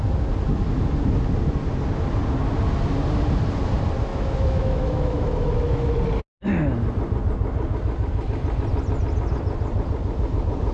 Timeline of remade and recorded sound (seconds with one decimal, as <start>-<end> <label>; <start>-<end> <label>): 0.0-4.1 recorded; 4.1-6.0 remade; 6.0-10.7 recorded